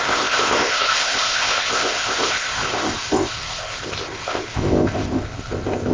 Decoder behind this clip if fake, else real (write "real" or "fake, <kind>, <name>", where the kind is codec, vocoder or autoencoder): fake, codec, ZipCodec